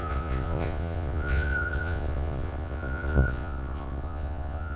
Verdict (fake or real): fake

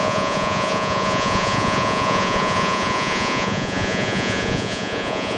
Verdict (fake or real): fake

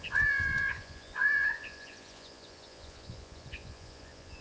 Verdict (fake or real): fake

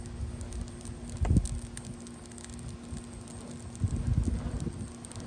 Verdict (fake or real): real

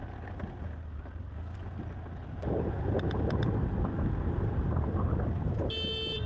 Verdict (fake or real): real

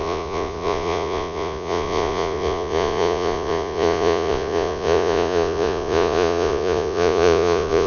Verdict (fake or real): fake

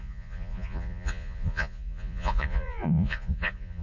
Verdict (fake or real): fake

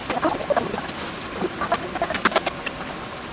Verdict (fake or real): real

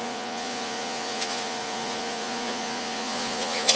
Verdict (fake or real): fake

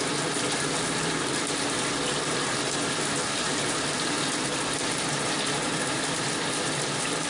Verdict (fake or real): real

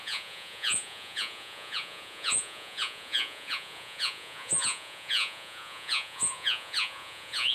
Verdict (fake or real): fake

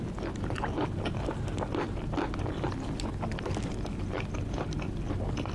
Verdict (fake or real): real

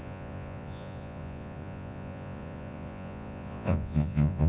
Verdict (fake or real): fake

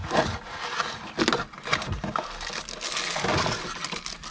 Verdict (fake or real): real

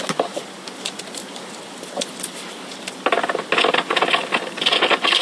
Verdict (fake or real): real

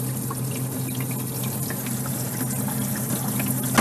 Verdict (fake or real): real